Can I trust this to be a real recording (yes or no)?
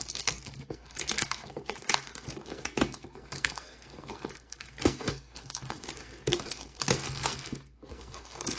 no